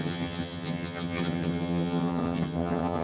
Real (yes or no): no